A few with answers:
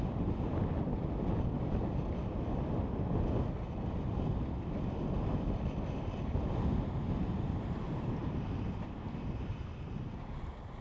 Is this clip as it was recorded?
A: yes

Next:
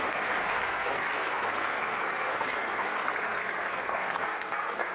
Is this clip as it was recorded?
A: no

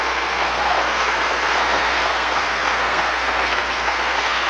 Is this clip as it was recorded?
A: no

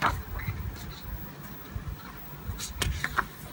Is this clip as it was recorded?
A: yes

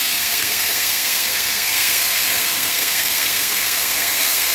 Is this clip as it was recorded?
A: no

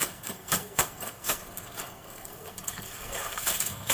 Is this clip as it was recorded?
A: no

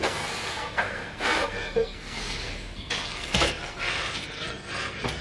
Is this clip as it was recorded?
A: no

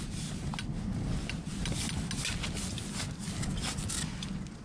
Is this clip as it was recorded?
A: yes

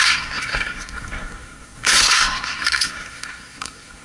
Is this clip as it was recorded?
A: no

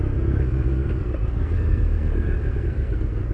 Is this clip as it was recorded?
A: no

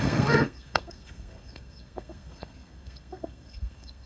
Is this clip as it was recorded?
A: no